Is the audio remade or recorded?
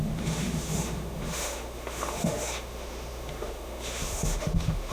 remade